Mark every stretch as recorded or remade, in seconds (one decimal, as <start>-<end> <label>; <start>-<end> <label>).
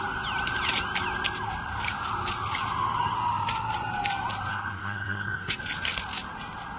0.0-4.5 recorded; 4.5-5.6 remade; 5.6-6.8 recorded